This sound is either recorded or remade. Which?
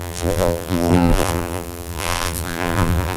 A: remade